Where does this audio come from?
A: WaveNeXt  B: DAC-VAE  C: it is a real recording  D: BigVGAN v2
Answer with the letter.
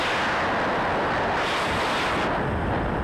C